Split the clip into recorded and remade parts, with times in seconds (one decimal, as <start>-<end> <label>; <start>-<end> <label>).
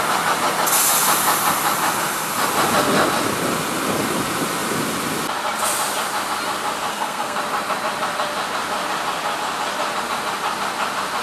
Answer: 0.0-6.9 recorded; 6.9-7.4 remade; 7.4-11.2 recorded